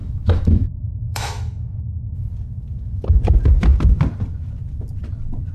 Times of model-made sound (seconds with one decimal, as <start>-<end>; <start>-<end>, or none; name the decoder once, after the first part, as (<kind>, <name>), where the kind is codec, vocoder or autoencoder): 0.0-2.3 (autoencoder, DAC-VAE)